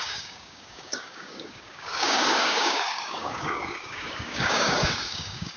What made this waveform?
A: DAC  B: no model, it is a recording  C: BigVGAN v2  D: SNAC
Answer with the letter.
A